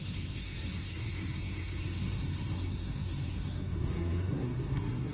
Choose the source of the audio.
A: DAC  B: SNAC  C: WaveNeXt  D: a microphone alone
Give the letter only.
B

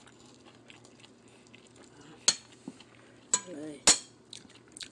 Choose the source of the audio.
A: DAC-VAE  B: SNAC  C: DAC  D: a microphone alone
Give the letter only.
D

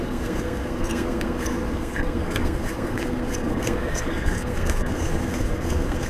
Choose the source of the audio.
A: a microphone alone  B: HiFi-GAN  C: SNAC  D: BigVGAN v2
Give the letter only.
C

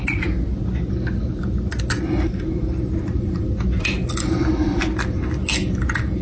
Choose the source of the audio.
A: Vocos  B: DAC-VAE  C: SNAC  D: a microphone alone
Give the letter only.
D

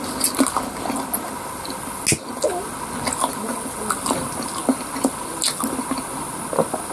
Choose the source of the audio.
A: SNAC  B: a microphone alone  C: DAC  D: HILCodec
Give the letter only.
B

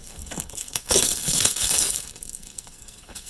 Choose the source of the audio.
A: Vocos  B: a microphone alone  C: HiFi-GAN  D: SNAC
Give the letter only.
D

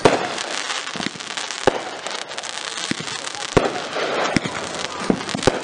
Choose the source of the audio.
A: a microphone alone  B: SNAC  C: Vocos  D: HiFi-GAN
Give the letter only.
A